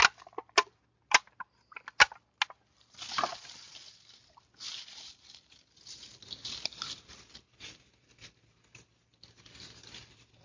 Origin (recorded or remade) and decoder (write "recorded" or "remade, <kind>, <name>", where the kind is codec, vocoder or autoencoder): recorded